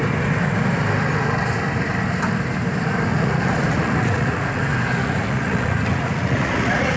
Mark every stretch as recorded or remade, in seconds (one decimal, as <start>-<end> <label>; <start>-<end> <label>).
0.0-3.1 recorded; 3.1-4.6 remade; 4.6-5.0 recorded; 5.0-7.0 remade